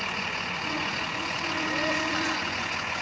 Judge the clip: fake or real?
fake